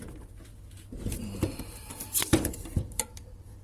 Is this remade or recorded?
remade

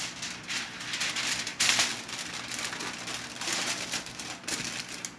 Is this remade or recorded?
recorded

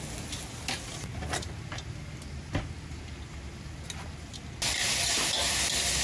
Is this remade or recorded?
recorded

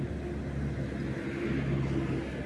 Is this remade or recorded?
recorded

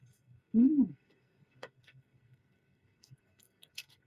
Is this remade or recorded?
remade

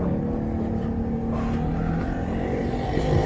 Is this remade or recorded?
recorded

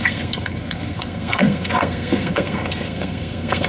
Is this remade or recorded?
remade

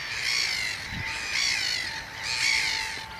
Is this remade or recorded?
recorded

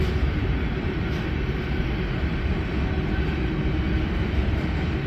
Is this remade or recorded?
recorded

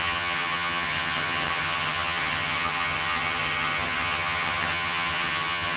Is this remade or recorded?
remade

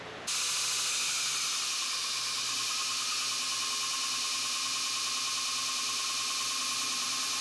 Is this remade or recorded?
recorded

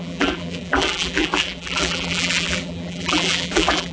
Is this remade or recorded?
remade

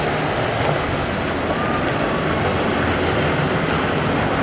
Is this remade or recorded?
recorded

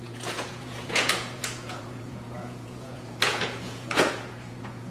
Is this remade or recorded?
remade